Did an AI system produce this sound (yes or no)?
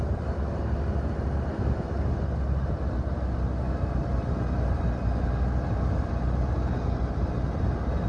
no